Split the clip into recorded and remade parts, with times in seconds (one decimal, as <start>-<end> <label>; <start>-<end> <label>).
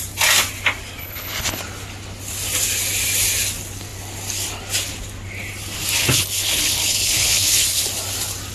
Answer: 0.0-1.0 recorded; 1.0-1.6 remade; 1.6-6.0 recorded; 6.0-7.8 remade; 7.8-8.5 recorded